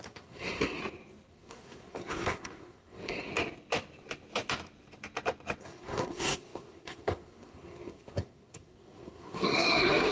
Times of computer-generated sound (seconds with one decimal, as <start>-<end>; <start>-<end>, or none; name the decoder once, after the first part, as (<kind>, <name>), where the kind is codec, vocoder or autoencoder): 0.0-0.8 (codec, SNAC); 1.3-3.3; 5.6-10.1